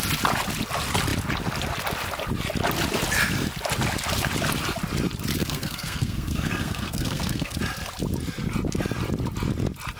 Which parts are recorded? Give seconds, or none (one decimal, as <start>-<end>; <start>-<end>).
0.0-5.4; 7.6-10.0